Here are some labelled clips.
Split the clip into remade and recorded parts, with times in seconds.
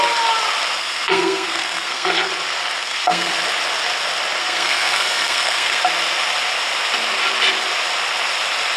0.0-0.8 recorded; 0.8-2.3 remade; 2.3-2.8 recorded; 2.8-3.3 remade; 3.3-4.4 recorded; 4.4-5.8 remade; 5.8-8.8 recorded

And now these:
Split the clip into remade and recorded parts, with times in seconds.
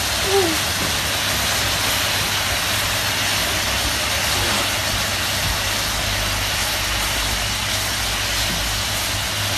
0.0-9.6 recorded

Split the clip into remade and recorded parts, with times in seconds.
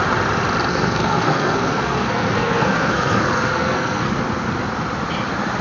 0.0-0.7 recorded; 0.7-4.1 remade; 4.1-5.6 recorded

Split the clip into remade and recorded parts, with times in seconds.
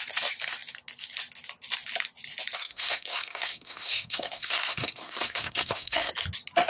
0.0-2.6 recorded; 2.6-6.1 remade; 6.1-6.7 recorded